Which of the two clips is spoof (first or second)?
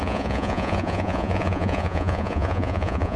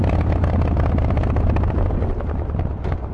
first